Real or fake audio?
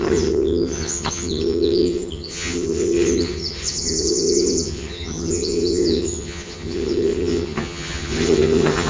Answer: fake